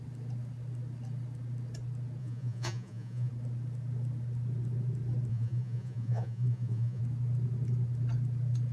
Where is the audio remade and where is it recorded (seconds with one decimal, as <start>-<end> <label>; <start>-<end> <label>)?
0.0-2.2 recorded; 2.2-3.3 remade; 3.3-5.3 recorded; 5.3-7.0 remade; 7.0-8.7 recorded